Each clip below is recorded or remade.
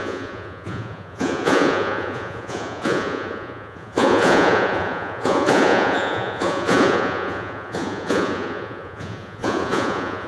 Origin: remade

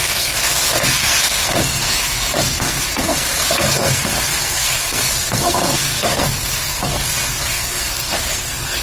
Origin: remade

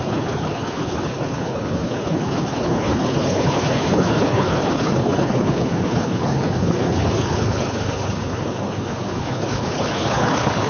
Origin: remade